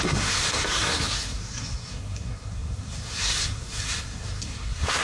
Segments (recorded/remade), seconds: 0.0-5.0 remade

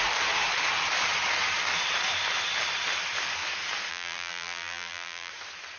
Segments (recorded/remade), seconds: 0.0-3.9 recorded; 3.9-5.3 remade; 5.3-5.8 recorded

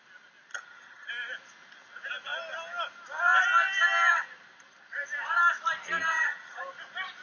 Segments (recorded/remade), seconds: 0.0-0.5 recorded; 0.5-1.1 remade; 1.1-6.1 recorded; 6.1-6.6 remade; 6.6-7.2 recorded

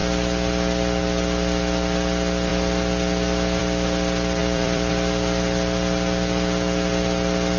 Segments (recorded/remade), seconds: 0.0-4.4 recorded; 4.4-4.9 remade; 4.9-7.6 recorded

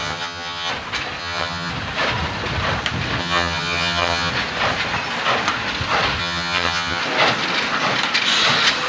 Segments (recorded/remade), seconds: 0.0-0.7 remade; 0.7-1.2 recorded; 1.2-1.7 remade; 1.7-3.2 recorded; 3.2-4.3 remade; 4.3-6.2 recorded; 6.2-7.0 remade; 7.0-8.9 recorded

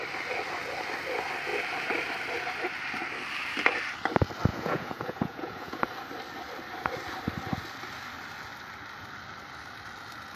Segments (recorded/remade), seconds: 0.0-4.5 recorded; 4.5-5.8 remade; 5.8-10.4 recorded

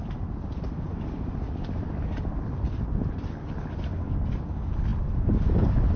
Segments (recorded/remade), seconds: 0.0-6.0 recorded